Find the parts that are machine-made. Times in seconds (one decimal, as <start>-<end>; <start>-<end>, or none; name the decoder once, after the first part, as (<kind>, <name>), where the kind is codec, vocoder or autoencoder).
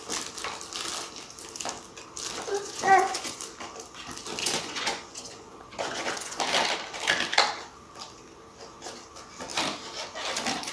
2.5-3.4 (vocoder, Vocos); 4.4-6.4